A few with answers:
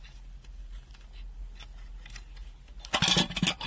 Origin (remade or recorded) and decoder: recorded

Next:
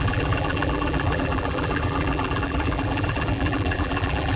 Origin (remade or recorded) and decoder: remade, vocoder, BigVGAN v2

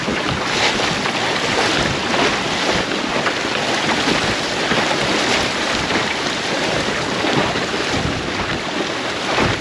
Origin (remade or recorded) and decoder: recorded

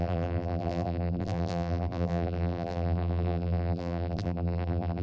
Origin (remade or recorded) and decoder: remade, vocoder, BigVGAN v2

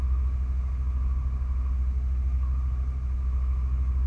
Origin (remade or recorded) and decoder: recorded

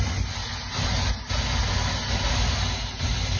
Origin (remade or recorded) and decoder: recorded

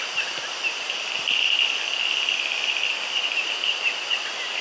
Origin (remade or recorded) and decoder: recorded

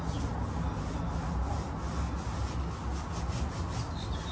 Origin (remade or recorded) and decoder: recorded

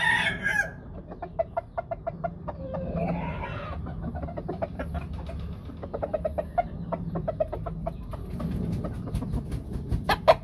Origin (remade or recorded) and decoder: recorded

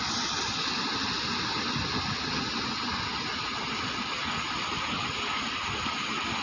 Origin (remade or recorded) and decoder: recorded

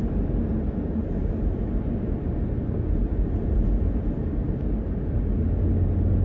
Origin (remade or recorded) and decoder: recorded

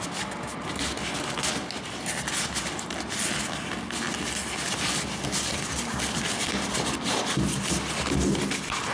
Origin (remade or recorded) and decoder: recorded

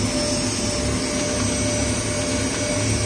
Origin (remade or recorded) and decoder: recorded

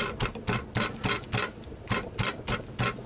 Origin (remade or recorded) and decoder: recorded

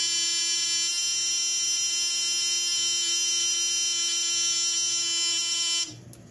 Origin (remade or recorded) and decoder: recorded